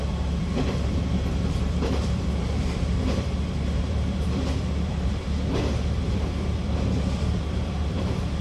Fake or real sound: fake